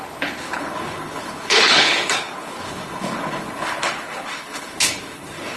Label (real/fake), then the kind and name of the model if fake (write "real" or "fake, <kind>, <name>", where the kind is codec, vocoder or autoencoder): fake, codec, HILCodec